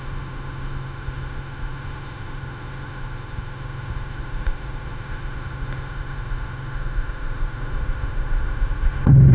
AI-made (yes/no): yes